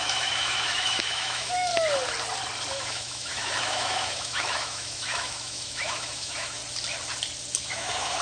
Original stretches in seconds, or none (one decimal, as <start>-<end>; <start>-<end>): 1.7-2.7; 6.6-7.6